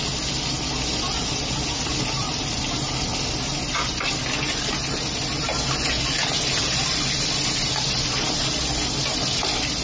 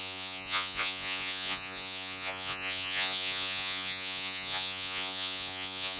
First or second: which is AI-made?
second